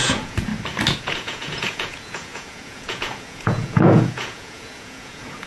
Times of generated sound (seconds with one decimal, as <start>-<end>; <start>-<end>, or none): 0.0-0.5; 1.0-5.5